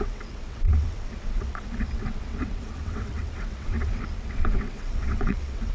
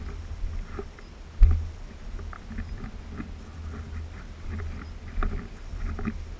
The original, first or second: second